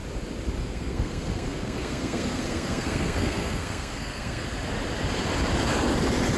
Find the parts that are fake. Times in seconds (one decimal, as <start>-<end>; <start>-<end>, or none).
0.6-4.4